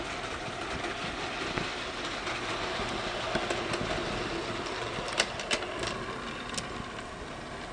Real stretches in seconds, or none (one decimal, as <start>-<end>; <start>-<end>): 0.0-7.7